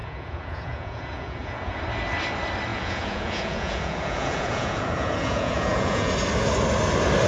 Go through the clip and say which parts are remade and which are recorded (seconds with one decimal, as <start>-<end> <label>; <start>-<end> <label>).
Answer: 0.0-1.8 remade; 1.8-2.7 recorded; 2.7-6.1 remade; 6.1-7.3 recorded